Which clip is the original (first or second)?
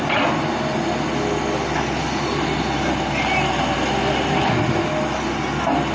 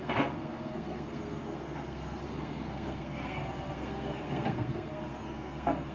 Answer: first